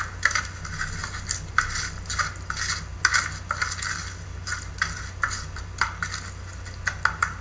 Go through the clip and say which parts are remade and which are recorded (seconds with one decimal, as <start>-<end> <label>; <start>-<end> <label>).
0.0-7.4 recorded